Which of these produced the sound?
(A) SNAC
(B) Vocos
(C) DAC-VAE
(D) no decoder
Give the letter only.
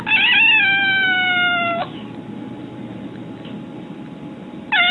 D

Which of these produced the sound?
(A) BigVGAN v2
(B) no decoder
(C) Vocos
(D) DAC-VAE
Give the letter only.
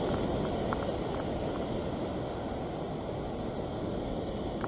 B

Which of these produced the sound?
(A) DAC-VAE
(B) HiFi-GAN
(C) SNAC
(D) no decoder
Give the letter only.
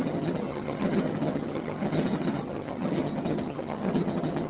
B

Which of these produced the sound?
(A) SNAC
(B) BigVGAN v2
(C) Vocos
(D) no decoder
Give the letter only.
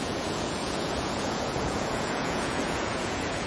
C